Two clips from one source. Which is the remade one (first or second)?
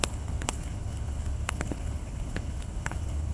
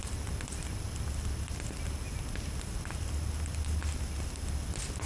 first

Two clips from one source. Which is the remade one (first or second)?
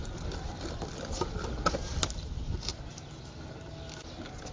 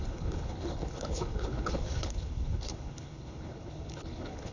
second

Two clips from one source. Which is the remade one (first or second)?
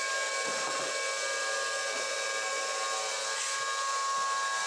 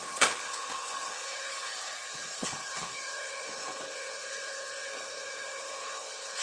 second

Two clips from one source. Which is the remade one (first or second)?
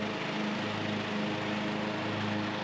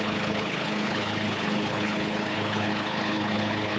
second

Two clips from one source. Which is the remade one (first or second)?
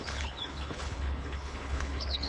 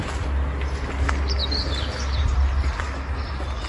first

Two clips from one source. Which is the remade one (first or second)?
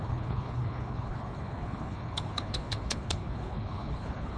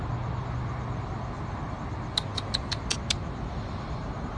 first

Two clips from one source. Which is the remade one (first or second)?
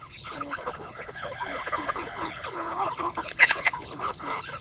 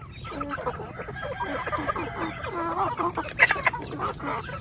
first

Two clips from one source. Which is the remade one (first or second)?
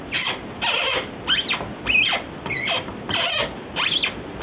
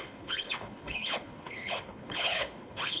second